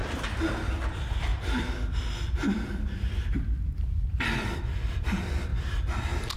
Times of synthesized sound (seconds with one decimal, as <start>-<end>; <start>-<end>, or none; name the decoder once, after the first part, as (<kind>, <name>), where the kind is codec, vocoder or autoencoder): 0.6-1.3 (vocoder, BigVGAN v2); 2.3-5.5